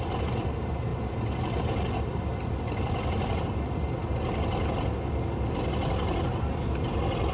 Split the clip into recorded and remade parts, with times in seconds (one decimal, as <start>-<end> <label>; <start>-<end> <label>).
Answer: 0.0-7.3 recorded